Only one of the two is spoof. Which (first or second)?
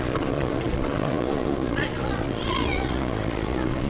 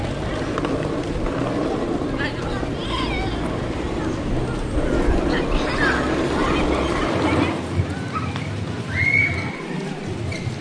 first